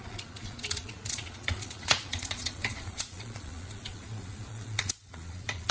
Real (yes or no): no